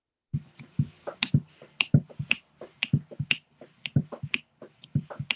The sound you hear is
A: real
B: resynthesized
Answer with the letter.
A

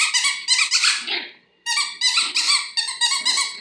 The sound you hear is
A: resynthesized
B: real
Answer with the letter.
B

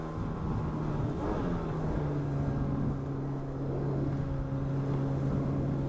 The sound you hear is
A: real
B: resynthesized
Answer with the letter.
A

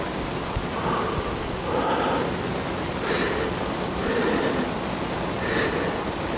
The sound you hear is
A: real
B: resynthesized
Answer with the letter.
A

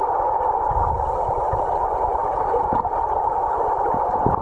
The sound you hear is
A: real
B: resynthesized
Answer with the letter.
A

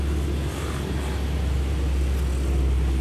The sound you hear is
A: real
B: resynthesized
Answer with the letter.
A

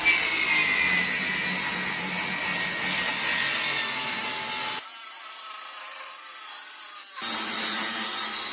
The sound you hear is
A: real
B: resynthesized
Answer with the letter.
A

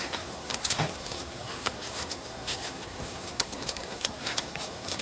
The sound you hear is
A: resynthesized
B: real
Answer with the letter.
A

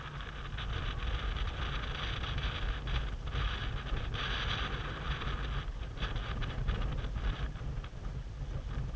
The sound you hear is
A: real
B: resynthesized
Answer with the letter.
A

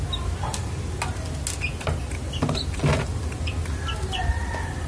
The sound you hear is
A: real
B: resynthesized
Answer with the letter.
A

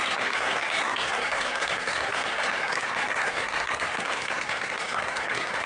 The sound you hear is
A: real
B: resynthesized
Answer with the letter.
B